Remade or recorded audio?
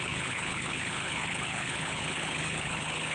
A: remade